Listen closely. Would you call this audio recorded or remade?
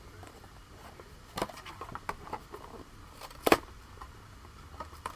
remade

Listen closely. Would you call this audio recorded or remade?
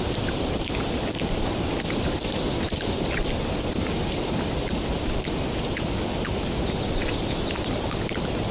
recorded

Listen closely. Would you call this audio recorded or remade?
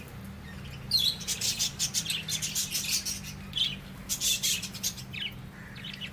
recorded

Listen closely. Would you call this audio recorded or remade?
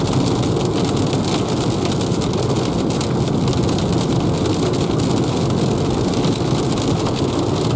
recorded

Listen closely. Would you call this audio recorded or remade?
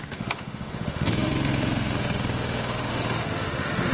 remade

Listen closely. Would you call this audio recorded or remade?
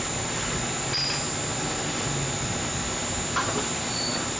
recorded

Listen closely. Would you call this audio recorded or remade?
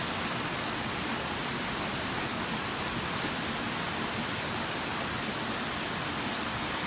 recorded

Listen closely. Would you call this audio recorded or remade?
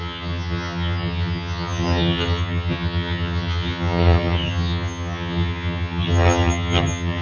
remade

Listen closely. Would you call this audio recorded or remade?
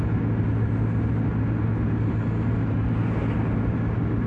recorded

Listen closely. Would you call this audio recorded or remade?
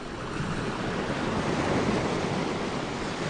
recorded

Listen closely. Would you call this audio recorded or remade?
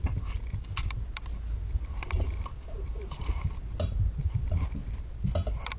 recorded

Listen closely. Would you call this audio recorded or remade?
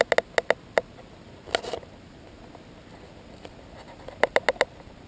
recorded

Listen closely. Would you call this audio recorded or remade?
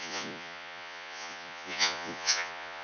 remade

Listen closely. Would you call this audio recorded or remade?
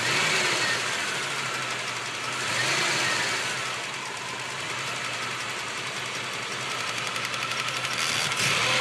recorded